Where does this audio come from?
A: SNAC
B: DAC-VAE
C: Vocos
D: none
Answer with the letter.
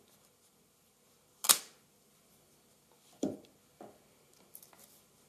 D